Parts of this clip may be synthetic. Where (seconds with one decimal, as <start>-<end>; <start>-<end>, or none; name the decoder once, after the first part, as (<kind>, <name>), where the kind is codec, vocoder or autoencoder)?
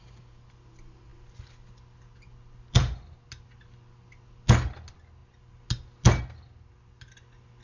none